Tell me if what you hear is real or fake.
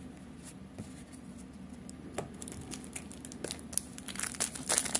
real